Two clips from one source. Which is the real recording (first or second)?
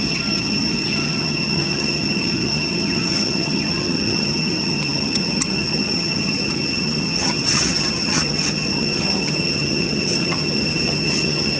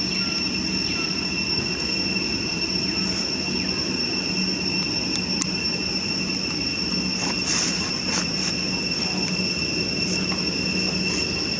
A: second